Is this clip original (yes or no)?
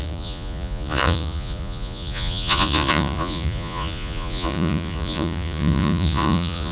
no